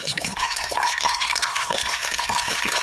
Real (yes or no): no